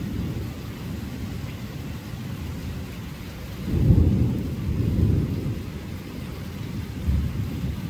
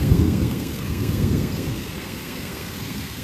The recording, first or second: first